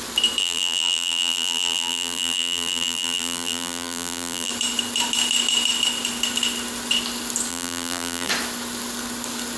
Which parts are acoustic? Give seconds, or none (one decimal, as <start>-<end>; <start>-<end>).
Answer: 0.0-0.4; 4.5-7.5; 8.3-9.6